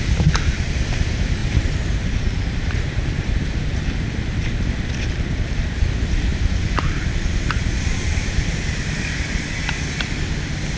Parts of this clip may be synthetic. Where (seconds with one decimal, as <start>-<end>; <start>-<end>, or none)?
1.4-3.3; 6.3-7.1